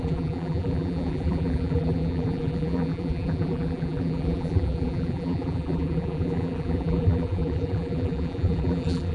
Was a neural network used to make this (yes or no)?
yes